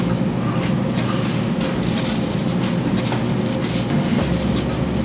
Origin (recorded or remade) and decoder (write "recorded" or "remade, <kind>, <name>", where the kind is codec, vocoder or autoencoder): recorded